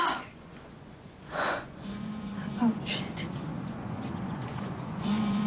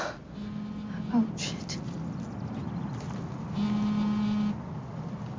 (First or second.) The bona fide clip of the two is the second